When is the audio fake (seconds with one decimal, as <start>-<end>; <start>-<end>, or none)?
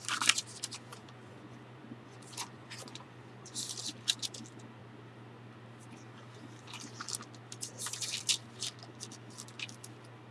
0.9-3.7